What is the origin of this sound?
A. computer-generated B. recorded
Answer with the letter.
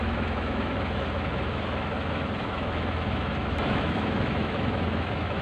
A